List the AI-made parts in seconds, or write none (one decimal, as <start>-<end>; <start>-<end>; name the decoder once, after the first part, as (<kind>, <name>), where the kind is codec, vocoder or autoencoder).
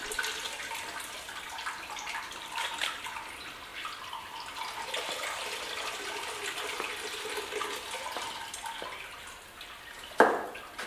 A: 0.0-3.0 (vocoder, BigVGAN v2); 3.7-7.6